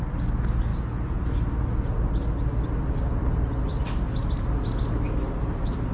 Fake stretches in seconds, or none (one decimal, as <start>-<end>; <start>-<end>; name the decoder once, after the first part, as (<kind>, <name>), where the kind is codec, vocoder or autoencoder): none